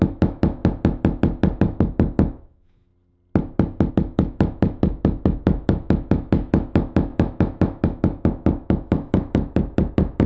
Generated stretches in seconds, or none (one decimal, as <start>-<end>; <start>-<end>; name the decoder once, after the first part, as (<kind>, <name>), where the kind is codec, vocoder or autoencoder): 0.0-0.6 (autoencoder, DAC-VAE); 1.6-2.9; 3.9-10.3